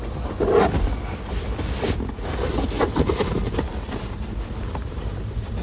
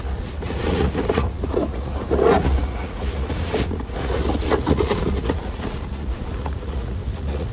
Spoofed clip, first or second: second